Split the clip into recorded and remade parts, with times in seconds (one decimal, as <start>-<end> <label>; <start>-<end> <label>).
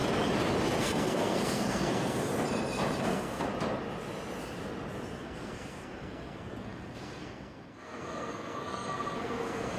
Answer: 0.0-0.8 recorded; 0.8-2.3 remade; 2.3-3.0 recorded; 3.0-3.5 remade; 3.5-5.2 recorded; 5.2-9.8 remade